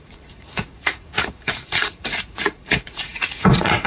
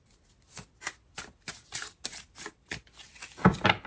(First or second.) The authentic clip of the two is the second